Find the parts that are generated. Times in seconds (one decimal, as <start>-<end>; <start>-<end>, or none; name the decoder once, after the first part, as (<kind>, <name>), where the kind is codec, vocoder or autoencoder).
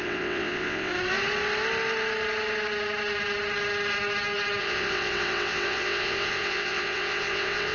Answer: 0.0-0.9 (vocoder, WaveNeXt); 4.6-7.7